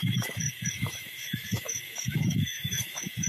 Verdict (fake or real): fake